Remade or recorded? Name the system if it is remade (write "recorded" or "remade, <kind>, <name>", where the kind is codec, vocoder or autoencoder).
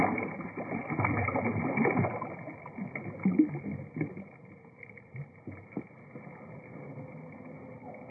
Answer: recorded